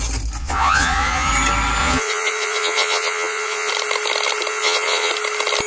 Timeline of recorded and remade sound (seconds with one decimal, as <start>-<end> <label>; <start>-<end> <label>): 0.0-0.4 recorded; 0.4-1.3 remade; 1.3-1.8 recorded; 1.8-3.7 remade; 3.7-4.5 recorded; 4.5-5.1 remade; 5.1-5.7 recorded